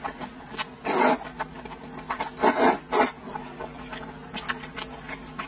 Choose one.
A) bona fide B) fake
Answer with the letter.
A